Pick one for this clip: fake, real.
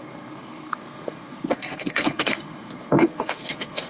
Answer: fake